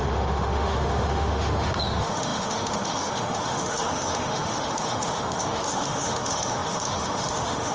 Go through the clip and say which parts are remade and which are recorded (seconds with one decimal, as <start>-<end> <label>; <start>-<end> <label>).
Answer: 0.0-7.7 remade